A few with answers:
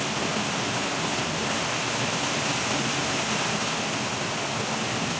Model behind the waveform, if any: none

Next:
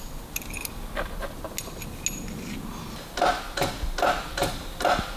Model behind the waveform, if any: none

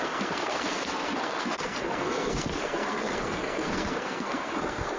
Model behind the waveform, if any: codec, SNAC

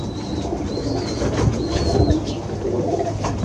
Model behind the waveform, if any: none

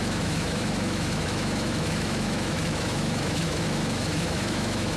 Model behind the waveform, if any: autoencoder, DAC-VAE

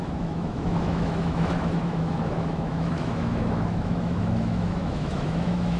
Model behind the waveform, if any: autoencoder, DAC-VAE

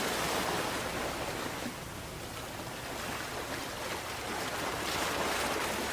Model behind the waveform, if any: none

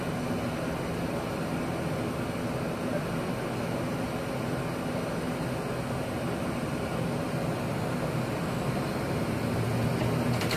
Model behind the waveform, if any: none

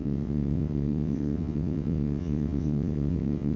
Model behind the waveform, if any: vocoder, WaveNeXt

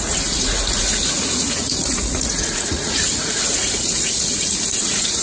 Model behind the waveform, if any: vocoder, Vocos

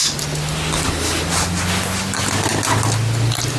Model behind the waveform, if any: none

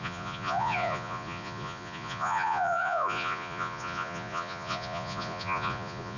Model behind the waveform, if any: vocoder, Vocos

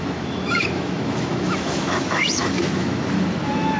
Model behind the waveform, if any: autoencoder, DAC-VAE